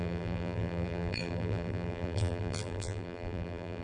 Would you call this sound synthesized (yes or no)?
yes